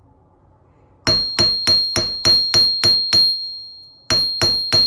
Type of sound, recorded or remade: recorded